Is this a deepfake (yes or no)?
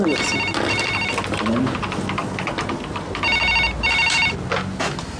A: no